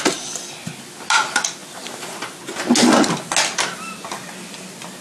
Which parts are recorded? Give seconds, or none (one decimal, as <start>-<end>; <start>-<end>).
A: 0.0-5.0